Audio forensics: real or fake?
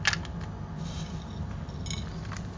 real